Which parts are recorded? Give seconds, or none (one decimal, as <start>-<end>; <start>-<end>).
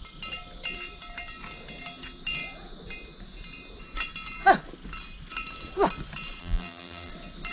0.0-6.4; 7.1-7.5